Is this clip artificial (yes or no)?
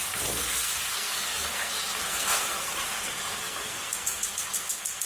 yes